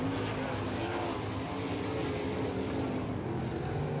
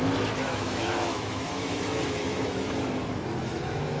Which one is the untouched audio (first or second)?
first